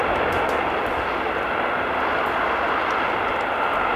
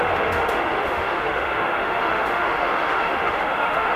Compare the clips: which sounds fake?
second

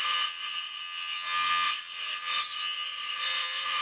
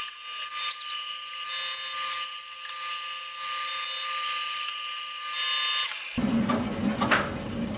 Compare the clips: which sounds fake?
first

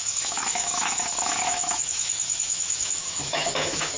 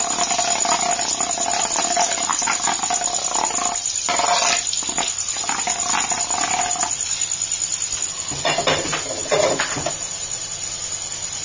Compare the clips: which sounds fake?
first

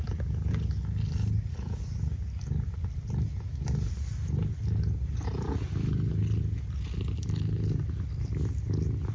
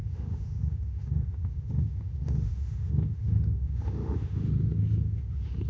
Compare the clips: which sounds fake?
second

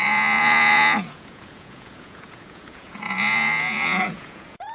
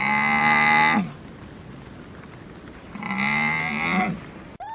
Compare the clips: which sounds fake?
first